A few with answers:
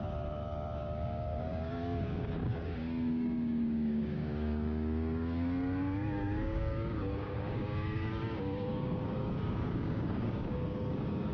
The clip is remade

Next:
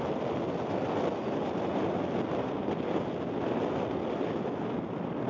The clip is recorded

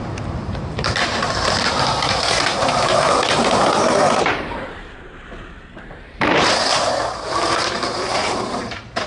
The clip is remade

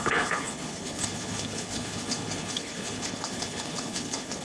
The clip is remade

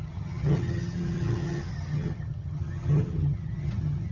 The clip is remade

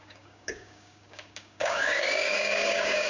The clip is remade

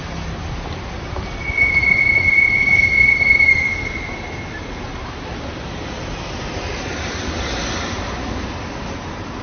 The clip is recorded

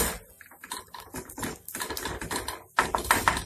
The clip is recorded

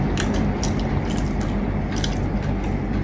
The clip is recorded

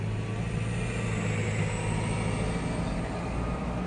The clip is recorded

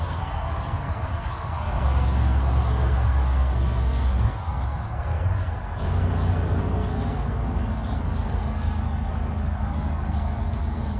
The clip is remade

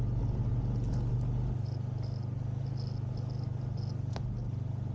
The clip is recorded